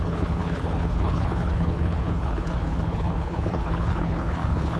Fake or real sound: fake